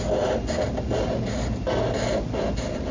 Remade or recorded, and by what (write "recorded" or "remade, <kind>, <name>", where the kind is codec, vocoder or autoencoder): recorded